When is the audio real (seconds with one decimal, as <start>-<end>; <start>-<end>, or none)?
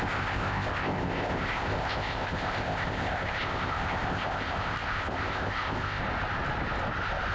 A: 6.0-7.3